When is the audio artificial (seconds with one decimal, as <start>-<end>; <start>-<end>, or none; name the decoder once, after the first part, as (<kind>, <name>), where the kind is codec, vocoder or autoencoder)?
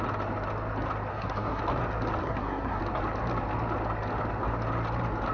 1.1-1.6 (codec, SNAC); 2.2-2.8